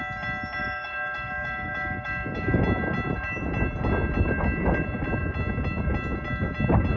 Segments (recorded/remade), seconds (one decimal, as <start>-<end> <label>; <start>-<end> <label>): 0.0-0.6 recorded; 0.6-2.6 remade; 2.6-7.0 recorded